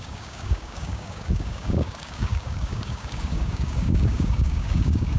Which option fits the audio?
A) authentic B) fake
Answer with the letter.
B